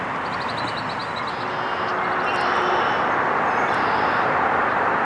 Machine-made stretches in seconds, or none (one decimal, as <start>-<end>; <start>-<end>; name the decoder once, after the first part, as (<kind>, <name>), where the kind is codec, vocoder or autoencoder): none

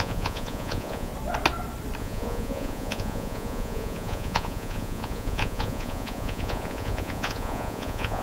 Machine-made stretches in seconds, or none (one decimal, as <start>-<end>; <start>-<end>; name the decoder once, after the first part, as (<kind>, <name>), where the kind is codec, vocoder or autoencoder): 0.0-1.1 (vocoder, Vocos); 2.0-8.2

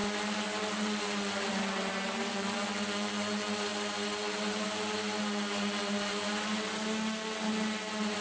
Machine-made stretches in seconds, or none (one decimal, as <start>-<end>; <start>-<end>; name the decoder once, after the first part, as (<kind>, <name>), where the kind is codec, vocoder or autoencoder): none

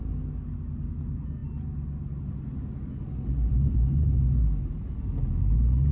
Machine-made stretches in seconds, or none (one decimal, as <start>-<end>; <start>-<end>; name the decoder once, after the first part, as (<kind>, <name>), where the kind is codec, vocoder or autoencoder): none

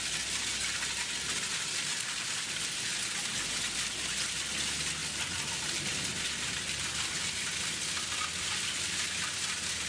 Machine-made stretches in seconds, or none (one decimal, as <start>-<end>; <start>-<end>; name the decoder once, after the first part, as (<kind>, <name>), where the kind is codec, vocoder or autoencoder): none

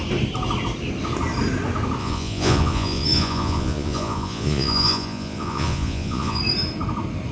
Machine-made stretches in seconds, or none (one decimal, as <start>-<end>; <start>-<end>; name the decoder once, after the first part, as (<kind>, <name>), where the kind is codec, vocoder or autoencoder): 2.0-6.4 (vocoder, Vocos)